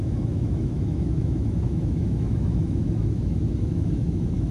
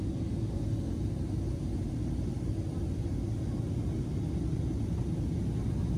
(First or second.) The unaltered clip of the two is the second